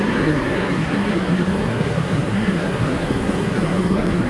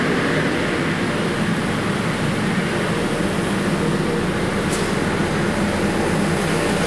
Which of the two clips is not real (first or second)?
first